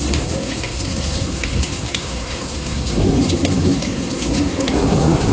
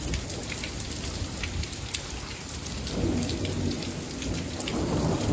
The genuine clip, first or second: second